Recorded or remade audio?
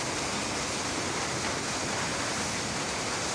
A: recorded